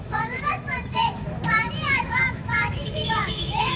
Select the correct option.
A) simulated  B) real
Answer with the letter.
A